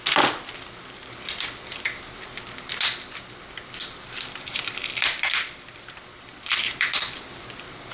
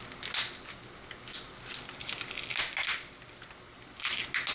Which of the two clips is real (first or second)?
second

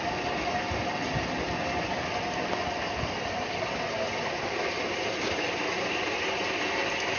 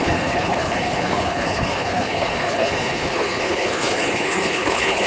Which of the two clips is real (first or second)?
first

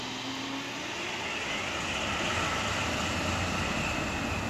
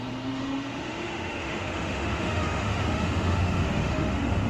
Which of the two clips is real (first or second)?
first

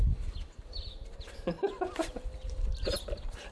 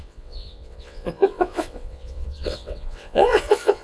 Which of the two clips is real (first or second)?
first